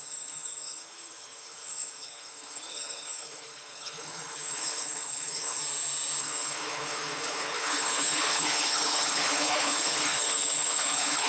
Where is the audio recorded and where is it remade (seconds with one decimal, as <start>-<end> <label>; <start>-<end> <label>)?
0.0-5.6 remade; 5.6-6.2 recorded; 6.2-11.3 remade